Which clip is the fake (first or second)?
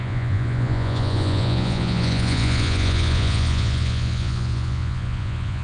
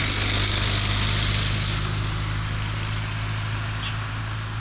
first